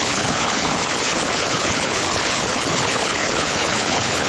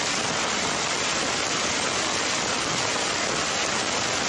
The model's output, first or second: first